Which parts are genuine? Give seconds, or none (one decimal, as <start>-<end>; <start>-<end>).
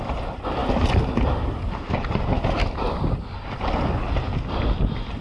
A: 0.0-5.2